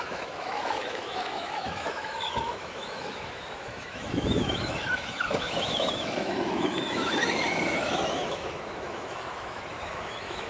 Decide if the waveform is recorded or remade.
remade